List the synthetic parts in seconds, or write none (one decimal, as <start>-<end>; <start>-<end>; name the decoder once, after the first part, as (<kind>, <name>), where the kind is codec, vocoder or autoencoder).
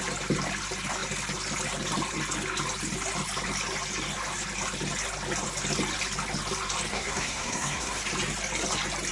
6.9-8.0 (codec, SNAC)